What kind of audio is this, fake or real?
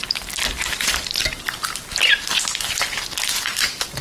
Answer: real